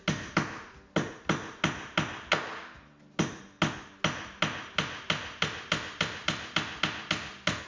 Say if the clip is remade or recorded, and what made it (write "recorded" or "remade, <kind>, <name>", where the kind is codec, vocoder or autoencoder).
recorded